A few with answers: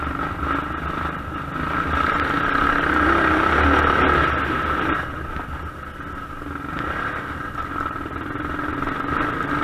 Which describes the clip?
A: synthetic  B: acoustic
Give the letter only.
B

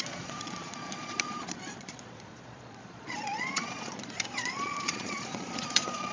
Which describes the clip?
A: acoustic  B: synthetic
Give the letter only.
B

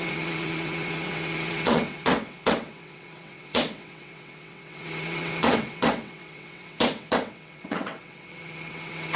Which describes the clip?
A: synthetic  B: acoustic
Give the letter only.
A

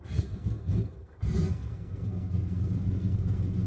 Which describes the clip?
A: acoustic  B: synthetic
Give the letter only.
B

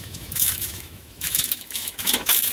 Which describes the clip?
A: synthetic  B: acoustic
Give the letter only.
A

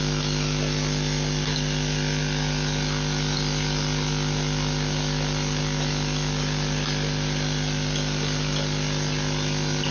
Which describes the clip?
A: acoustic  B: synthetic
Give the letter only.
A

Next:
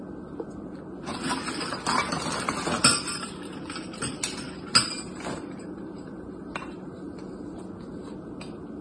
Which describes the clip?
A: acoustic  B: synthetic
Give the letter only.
A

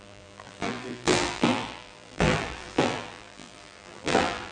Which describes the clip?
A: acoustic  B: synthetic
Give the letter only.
B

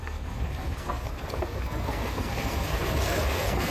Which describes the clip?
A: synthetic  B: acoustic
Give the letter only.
A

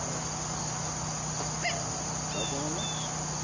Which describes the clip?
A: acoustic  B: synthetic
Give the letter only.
A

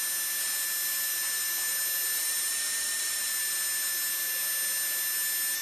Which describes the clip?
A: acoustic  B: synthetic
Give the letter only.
A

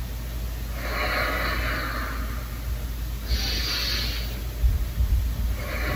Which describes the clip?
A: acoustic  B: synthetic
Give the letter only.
A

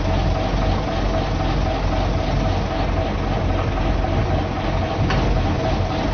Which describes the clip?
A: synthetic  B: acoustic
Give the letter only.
B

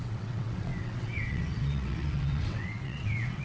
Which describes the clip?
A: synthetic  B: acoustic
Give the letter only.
A